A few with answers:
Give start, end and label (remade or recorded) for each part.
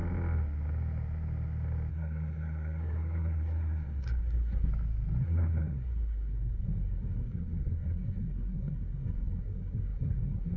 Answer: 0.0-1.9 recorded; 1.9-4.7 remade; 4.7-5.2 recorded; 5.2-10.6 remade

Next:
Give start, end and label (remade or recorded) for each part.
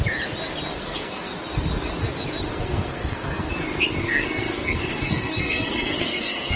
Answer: 0.0-0.7 recorded; 0.7-1.3 remade; 1.3-2.5 recorded; 2.5-3.5 remade; 3.5-4.0 recorded; 4.0-6.6 remade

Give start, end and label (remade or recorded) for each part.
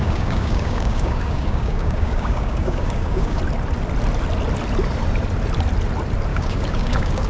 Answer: 0.0-3.4 remade; 3.4-6.3 recorded; 6.3-7.3 remade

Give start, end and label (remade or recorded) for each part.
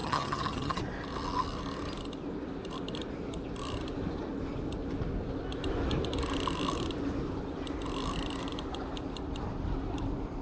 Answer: 0.0-0.8 remade; 0.8-10.4 recorded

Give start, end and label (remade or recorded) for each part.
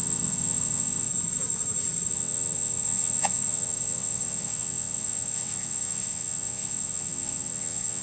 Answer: 0.0-1.1 remade; 1.1-2.1 recorded; 2.1-8.0 remade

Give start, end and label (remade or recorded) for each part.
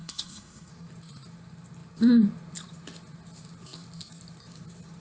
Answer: 0.0-0.7 remade; 0.7-5.0 recorded